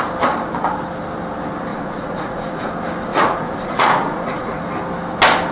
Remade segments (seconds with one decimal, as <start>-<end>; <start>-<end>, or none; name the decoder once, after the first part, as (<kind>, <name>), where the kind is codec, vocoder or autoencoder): 1.7-2.7 (vocoder, Vocos); 3.1-4.6